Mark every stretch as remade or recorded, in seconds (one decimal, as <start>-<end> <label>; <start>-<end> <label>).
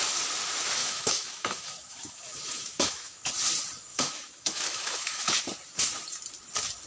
0.0-0.8 recorded; 0.8-3.3 remade; 3.3-3.9 recorded; 3.9-5.4 remade; 5.4-6.9 recorded